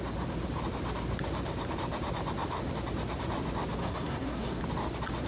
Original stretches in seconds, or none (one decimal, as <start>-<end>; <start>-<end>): 0.0-3.8; 4.6-5.3